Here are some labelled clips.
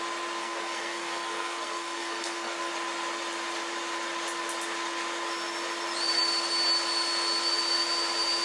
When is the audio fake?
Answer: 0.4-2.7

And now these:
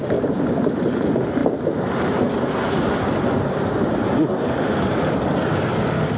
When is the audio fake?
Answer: none

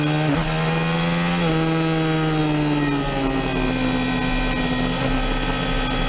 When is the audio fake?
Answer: none

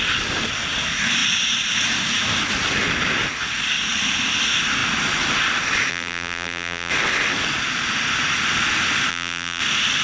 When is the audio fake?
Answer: 5.9-6.9; 9.1-9.6